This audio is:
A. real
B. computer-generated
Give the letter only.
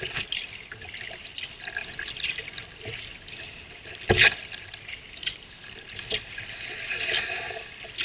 A